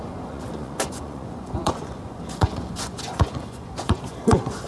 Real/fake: fake